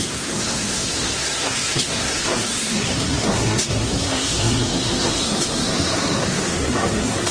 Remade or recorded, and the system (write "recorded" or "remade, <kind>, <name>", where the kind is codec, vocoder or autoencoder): remade, codec, SNAC